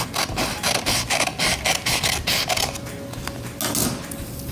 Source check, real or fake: real